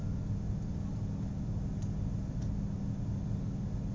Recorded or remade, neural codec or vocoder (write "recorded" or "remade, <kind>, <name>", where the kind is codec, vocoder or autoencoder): recorded